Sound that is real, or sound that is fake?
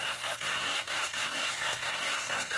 fake